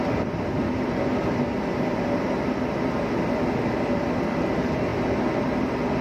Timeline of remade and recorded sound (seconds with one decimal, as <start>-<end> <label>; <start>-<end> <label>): 0.0-1.1 remade; 1.1-3.7 recorded; 3.7-4.9 remade; 4.9-5.4 recorded; 5.4-6.0 remade